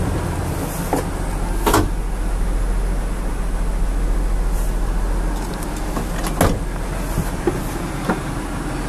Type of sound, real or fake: real